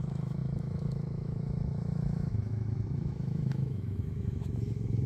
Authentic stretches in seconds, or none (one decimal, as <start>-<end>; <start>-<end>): none